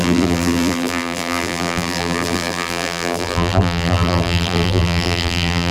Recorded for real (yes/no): no